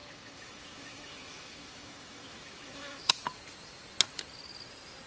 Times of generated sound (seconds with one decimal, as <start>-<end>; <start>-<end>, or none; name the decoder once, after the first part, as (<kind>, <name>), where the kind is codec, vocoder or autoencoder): 0.0-3.1 (autoencoder, DAC-VAE)